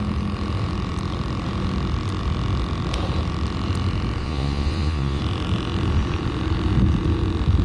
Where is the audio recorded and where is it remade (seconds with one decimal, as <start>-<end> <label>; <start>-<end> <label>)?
0.0-4.2 recorded; 4.2-5.2 remade; 5.2-7.6 recorded